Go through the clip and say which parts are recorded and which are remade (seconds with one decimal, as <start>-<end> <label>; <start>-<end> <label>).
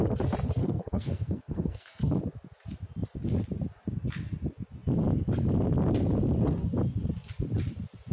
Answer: 0.0-0.6 recorded; 0.6-2.2 remade; 2.2-8.1 recorded